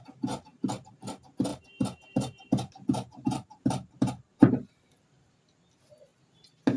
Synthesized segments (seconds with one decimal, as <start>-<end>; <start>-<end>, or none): 0.5-1.0; 1.5-5.6